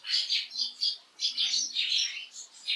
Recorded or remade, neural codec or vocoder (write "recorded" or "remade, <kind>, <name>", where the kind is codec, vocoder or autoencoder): recorded